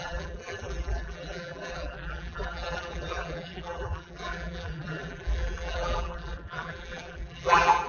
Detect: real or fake fake